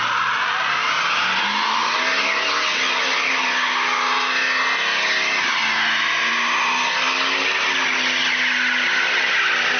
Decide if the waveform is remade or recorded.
recorded